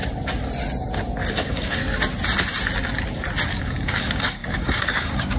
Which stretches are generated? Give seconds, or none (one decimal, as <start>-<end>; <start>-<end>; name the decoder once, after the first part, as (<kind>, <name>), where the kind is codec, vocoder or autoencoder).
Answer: 1.3-1.8 (codec, DAC); 3.6-5.4